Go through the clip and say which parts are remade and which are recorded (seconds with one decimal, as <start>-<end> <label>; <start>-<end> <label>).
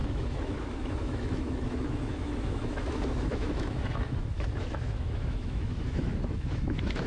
0.0-7.1 remade